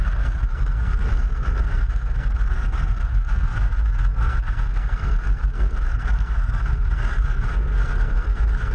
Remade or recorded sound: remade